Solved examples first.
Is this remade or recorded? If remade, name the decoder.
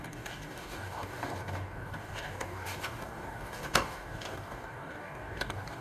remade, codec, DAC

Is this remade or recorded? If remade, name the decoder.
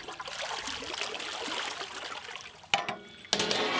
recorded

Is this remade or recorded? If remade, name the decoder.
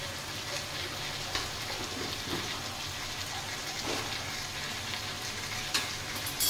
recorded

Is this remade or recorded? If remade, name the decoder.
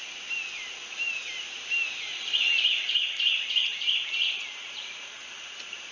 recorded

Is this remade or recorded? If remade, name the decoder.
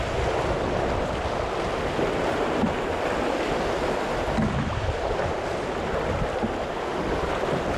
recorded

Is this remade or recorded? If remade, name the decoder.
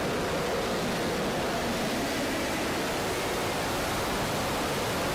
recorded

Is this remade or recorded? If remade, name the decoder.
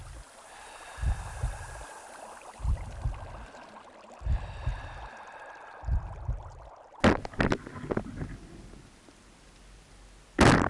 recorded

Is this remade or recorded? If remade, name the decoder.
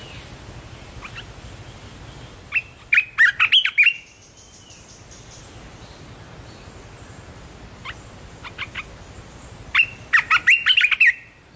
recorded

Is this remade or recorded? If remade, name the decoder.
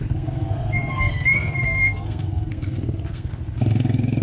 remade, codec, SNAC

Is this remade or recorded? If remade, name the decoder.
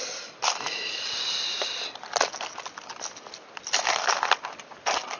recorded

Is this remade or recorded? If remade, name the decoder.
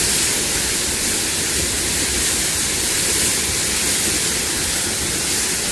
recorded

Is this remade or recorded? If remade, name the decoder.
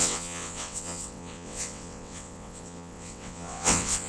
remade, vocoder, WaveNeXt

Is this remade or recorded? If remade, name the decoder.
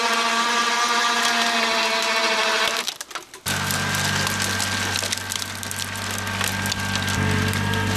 recorded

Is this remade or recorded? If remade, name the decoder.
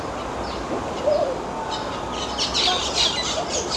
recorded